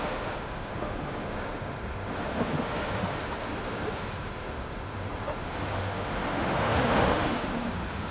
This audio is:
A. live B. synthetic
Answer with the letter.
B